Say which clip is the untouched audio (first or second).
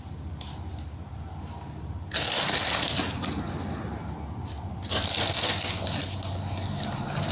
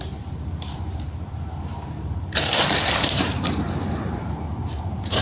first